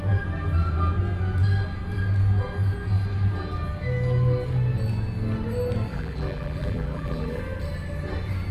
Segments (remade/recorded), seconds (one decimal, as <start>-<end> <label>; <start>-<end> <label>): 0.0-5.9 recorded; 5.9-7.4 remade; 7.4-8.5 recorded